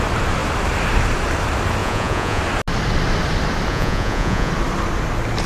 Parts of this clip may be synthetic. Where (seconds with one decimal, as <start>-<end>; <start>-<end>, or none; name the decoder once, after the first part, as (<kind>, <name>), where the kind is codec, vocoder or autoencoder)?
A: 1.8-2.4 (vocoder, Vocos); 3.7-4.5